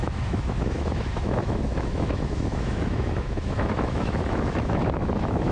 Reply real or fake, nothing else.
fake